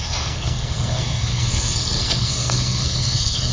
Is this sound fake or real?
fake